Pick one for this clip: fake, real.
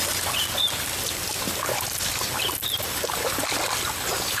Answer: real